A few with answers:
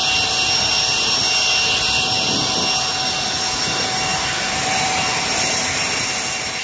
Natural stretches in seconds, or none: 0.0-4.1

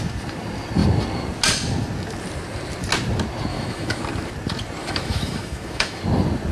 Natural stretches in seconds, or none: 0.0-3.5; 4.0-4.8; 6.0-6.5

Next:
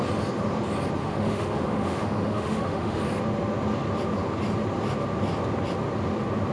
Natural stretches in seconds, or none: 0.0-1.0; 3.0-6.5